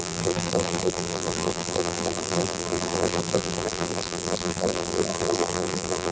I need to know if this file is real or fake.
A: fake